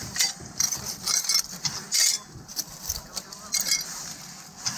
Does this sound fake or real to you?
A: fake